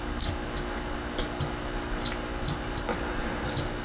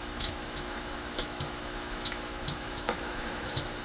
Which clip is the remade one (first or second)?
second